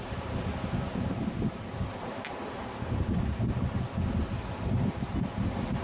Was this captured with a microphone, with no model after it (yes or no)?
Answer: yes